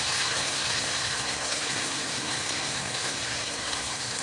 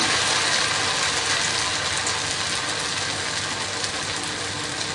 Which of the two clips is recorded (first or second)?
second